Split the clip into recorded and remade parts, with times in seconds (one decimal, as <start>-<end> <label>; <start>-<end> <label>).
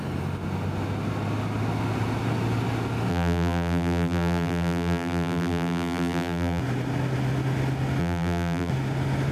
0.0-3.1 recorded; 3.1-6.6 remade; 6.6-8.0 recorded; 8.0-8.7 remade; 8.7-9.3 recorded